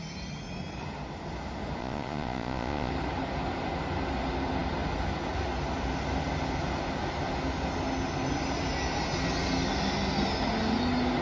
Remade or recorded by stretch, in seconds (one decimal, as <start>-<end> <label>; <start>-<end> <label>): 0.0-1.8 recorded; 1.8-2.9 remade; 2.9-11.2 recorded